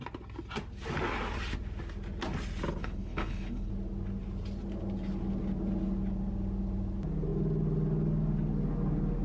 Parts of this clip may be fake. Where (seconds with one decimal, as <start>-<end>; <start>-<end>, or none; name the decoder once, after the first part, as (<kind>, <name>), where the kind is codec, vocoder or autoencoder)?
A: 2.8-3.7 (codec, HILCodec)